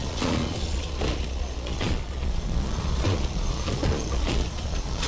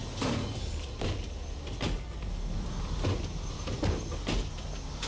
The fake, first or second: first